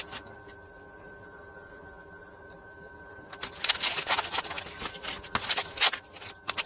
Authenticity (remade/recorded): recorded